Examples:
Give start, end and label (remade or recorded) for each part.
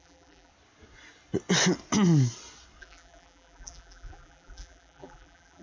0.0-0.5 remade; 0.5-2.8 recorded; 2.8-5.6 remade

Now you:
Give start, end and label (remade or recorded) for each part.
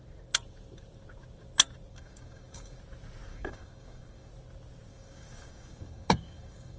0.0-1.9 recorded; 1.9-2.8 remade; 2.8-3.3 recorded; 3.3-4.3 remade; 4.3-4.9 recorded; 4.9-6.8 remade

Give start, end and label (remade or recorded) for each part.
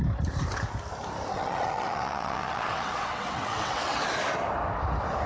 0.0-1.3 recorded; 1.3-4.1 remade; 4.1-5.3 recorded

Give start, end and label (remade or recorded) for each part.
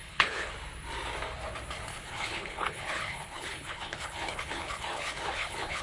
0.0-0.5 remade; 0.5-1.9 recorded; 1.9-5.8 remade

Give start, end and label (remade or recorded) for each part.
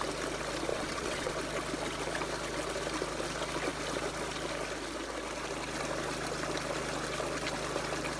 0.0-0.7 recorded; 0.7-1.3 remade; 1.3-8.2 recorded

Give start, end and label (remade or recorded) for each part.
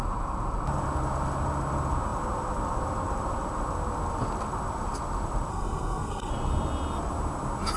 0.0-5.5 recorded; 5.5-6.3 remade; 6.3-7.8 recorded